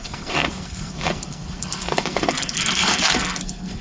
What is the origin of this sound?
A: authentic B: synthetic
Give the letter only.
B